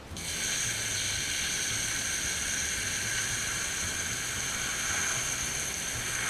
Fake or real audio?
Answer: real